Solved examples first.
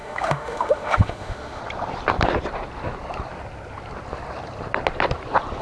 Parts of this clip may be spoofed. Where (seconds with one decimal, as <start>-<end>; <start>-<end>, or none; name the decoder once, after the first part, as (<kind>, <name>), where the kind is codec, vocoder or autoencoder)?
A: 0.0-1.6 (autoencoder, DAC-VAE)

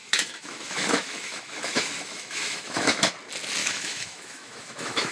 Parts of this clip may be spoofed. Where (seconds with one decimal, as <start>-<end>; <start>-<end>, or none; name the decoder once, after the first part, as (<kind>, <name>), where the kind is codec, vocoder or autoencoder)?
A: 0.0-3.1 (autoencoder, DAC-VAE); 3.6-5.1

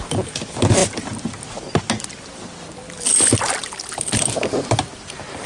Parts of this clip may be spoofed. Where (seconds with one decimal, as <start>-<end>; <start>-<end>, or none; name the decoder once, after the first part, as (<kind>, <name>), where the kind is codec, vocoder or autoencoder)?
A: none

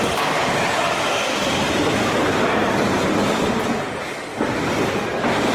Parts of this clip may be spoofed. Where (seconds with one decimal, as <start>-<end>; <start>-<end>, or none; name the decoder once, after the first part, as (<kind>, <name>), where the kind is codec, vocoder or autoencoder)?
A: none

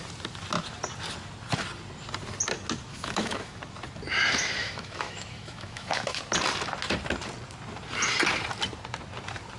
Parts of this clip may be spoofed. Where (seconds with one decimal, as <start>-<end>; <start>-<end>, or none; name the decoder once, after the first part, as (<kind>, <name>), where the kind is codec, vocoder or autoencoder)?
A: 2.9-3.6 (autoencoder, DAC-VAE); 4.6-6.2